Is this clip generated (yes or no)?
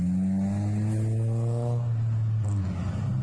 no